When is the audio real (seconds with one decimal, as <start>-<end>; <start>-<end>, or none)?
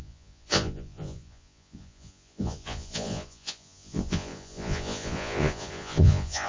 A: none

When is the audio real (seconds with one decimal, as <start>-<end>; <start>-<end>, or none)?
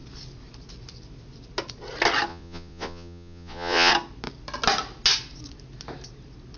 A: 0.0-2.3; 3.9-6.6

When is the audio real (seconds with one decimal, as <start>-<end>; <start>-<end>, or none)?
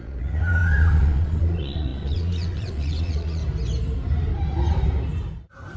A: 3.4-5.8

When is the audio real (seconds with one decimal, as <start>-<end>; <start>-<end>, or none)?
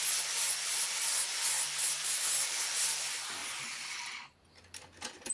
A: 0.0-5.3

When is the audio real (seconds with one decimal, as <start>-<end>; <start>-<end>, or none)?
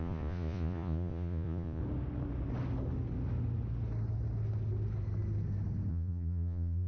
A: 1.8-5.9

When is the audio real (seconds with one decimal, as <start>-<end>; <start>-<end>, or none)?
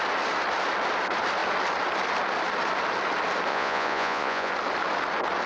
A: 0.0-3.5; 4.5-5.5